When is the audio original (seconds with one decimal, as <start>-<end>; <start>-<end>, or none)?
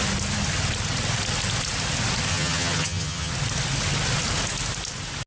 0.0-2.3; 3.3-5.3